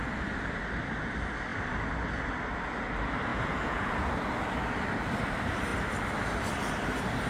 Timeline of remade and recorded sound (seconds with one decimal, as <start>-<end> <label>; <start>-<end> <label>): 0.0-3.3 recorded; 3.3-4.1 remade; 4.1-7.3 recorded